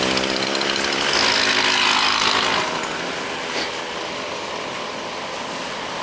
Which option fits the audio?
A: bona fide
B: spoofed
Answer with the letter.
A